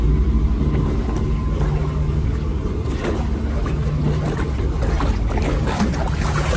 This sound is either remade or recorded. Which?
recorded